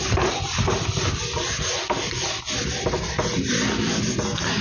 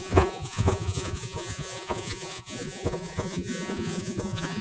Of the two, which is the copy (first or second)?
second